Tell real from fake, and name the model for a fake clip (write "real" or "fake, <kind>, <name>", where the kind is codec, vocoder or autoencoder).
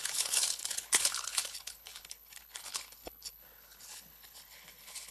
fake, codec, HILCodec